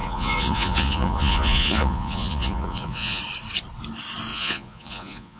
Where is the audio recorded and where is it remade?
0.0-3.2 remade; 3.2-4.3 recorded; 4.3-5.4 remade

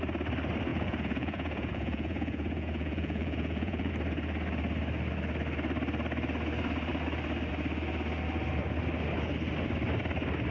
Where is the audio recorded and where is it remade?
0.0-0.7 recorded; 0.7-3.9 remade; 3.9-10.5 recorded

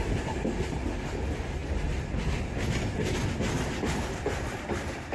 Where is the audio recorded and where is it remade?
0.0-5.1 recorded

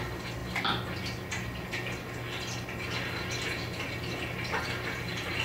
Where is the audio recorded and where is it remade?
0.0-5.4 recorded